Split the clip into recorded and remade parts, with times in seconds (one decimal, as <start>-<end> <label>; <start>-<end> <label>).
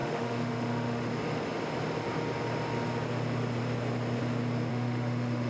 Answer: 0.0-1.1 remade; 1.1-4.7 recorded; 4.7-5.5 remade